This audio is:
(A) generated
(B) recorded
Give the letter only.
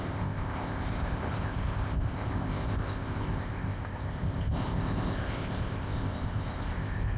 A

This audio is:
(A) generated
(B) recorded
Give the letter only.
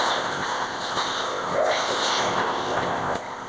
A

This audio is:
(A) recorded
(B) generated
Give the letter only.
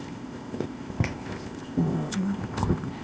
B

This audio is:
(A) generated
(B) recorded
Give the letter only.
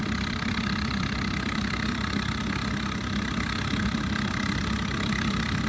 B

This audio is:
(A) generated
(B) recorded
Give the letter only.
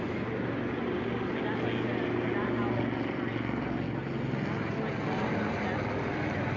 B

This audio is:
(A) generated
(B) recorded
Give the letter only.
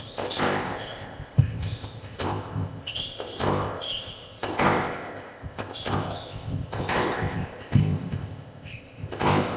A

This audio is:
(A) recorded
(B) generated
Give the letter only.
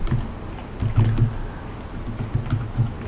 A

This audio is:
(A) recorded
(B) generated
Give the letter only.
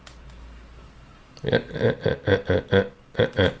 A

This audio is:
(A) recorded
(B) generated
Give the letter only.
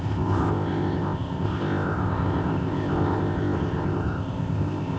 B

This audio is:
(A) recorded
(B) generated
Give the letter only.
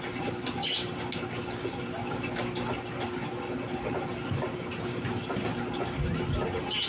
A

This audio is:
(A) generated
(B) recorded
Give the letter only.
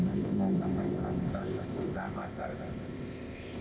A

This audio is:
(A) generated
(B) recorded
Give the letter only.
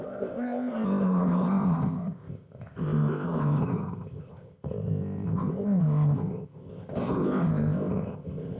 A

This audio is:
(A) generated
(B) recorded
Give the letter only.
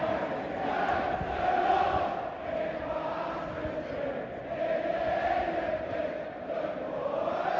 B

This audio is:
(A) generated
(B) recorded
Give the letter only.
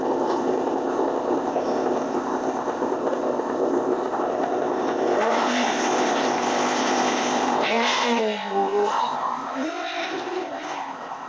A